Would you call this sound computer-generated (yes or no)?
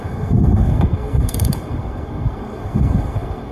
yes